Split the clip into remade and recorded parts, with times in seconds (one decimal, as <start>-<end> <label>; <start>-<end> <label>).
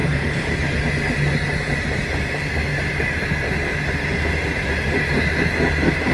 0.0-0.7 remade; 0.7-4.5 recorded; 4.5-5.0 remade; 5.0-6.1 recorded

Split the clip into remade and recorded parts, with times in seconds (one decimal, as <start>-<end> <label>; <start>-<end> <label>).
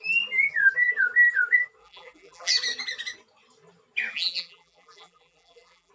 0.0-1.8 recorded; 1.8-2.5 remade; 2.5-4.1 recorded; 4.1-5.9 remade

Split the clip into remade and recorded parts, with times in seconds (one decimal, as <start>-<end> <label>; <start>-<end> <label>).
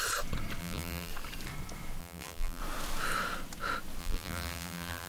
0.0-0.6 recorded; 0.6-1.1 remade; 1.1-2.0 recorded; 2.0-2.6 remade; 2.6-4.0 recorded; 4.0-5.1 remade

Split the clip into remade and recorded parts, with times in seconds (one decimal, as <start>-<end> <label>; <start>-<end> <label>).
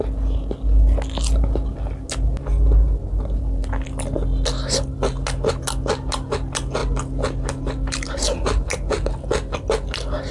0.0-10.3 recorded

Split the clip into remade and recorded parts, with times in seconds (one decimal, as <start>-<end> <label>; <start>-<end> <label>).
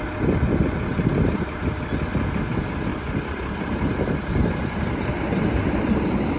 0.0-2.9 recorded; 2.9-5.2 remade; 5.2-6.4 recorded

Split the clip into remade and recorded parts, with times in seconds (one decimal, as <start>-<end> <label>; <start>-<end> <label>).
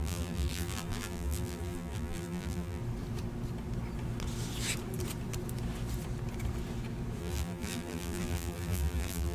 0.0-2.8 remade; 2.8-7.2 recorded; 7.2-9.3 remade